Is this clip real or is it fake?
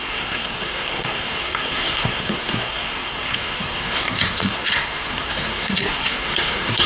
fake